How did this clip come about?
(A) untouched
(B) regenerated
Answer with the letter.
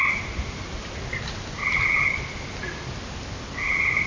A